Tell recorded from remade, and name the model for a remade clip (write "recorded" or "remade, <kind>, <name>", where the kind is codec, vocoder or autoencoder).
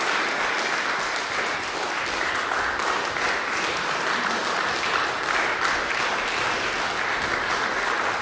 recorded